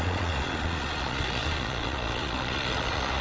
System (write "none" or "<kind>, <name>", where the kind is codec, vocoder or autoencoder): vocoder, Vocos